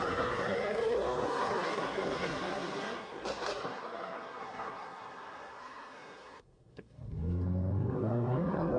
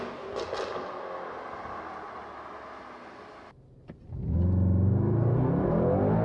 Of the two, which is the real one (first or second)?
second